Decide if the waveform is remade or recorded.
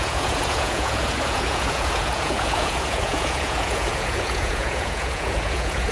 remade